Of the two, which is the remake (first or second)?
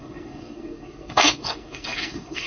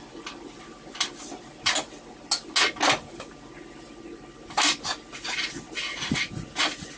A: first